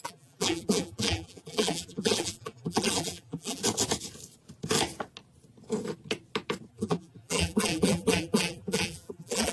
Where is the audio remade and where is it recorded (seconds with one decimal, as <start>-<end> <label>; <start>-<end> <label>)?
0.0-3.6 remade; 3.6-6.7 recorded; 6.7-9.5 remade